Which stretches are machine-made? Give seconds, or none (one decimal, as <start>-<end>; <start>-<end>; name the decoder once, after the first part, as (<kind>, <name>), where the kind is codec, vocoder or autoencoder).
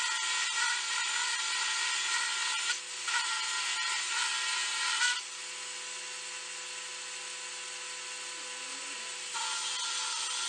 8.7-9.4 (vocoder, BigVGAN v2)